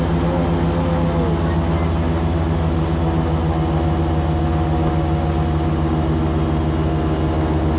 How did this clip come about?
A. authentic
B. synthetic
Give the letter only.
A